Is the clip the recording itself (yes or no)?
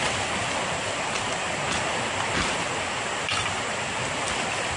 yes